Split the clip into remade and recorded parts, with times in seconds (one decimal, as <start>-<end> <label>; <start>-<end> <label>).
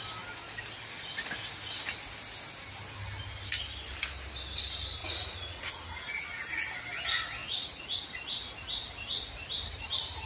0.0-5.0 recorded; 5.0-5.6 remade; 5.6-7.4 recorded; 7.4-8.0 remade; 8.0-10.3 recorded